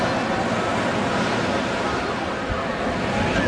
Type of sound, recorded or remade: recorded